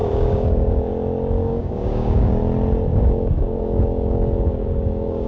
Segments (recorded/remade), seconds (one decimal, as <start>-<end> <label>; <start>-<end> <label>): 0.0-0.9 remade; 0.9-1.4 recorded; 1.4-2.4 remade; 2.4-2.9 recorded; 2.9-5.3 remade